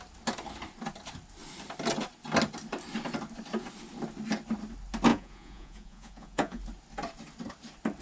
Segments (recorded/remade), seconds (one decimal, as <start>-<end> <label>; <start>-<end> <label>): 0.0-5.1 recorded; 5.1-6.6 remade; 6.6-8.0 recorded